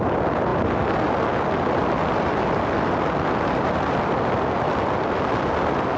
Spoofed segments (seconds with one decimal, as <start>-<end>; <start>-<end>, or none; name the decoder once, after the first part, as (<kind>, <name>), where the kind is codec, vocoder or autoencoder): none